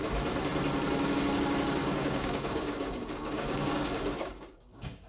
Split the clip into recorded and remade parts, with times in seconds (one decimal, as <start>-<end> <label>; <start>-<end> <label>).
0.0-1.8 recorded; 1.8-5.1 remade